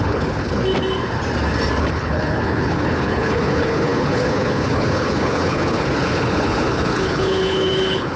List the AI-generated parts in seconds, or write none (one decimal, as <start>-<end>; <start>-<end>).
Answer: 0.0-0.6; 1.8-8.2